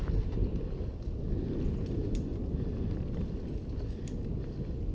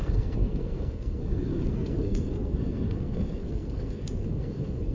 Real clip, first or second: first